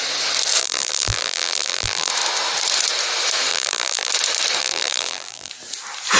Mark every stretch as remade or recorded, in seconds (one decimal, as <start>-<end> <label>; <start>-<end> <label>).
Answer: 0.0-0.6 recorded; 0.6-2.1 remade; 2.1-3.5 recorded; 3.5-4.1 remade; 4.1-4.6 recorded; 4.6-5.5 remade; 5.5-6.2 recorded